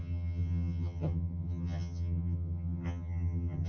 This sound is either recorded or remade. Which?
remade